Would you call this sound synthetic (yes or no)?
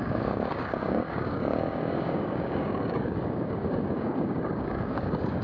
yes